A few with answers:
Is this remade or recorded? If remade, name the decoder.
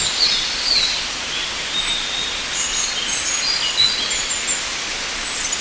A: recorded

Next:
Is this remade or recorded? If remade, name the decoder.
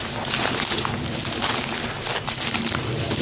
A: recorded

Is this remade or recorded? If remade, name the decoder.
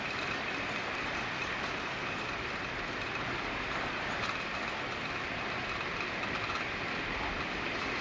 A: recorded